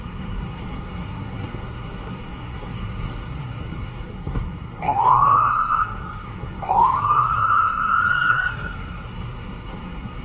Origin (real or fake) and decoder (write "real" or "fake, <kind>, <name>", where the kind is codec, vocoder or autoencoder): fake, codec, SNAC